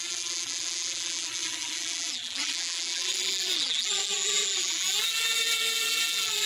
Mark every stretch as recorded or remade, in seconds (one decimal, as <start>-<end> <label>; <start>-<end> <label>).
0.0-6.5 remade